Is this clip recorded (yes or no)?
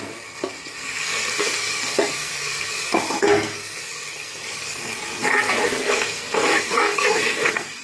no